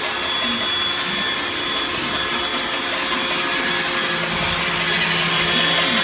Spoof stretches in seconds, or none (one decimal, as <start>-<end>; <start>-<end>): none